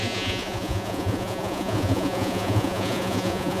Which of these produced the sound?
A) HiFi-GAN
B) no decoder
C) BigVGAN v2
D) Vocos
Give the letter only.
D